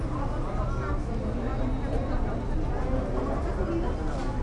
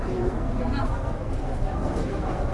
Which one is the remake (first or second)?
second